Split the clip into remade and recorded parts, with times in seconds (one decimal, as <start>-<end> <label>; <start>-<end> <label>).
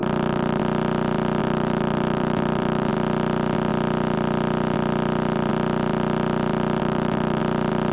0.0-0.6 remade; 0.6-1.4 recorded; 1.4-2.9 remade; 2.9-6.8 recorded; 6.8-7.4 remade; 7.4-7.9 recorded